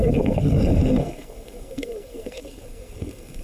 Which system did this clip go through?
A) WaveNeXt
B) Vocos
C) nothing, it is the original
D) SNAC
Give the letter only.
D